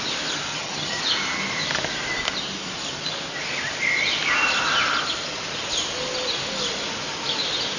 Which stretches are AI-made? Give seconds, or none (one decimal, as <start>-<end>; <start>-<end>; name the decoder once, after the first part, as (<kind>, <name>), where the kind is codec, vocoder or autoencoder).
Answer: 0.5-1.0 (vocoder, HiFi-GAN)